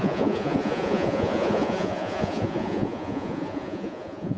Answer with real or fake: fake